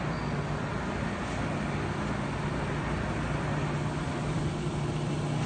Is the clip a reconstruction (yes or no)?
no